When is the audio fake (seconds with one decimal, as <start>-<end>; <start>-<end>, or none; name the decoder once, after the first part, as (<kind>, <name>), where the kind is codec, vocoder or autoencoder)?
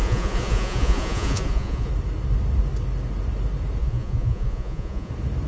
0.0-1.9 (vocoder, Vocos); 3.8-5.1